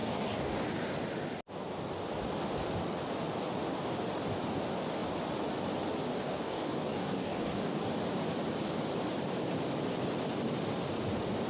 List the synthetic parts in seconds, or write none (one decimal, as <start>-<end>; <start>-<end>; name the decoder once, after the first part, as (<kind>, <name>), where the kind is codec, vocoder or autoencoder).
0.0-0.6 (codec, DAC); 6.1-7.8